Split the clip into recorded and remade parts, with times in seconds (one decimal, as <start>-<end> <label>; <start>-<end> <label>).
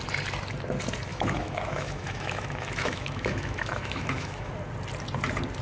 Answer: 0.0-1.1 recorded; 1.1-4.5 remade; 4.5-5.6 recorded